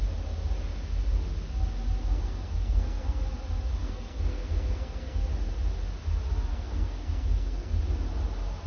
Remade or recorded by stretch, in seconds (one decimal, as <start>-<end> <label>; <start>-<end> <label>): 0.0-2.0 recorded; 2.0-3.2 remade; 3.2-3.8 recorded; 3.8-5.3 remade; 5.3-6.5 recorded; 6.5-7.8 remade; 7.8-8.7 recorded